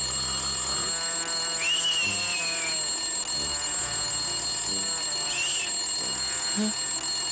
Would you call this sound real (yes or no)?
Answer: yes